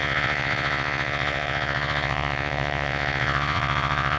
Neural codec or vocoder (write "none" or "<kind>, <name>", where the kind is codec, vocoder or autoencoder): vocoder, Vocos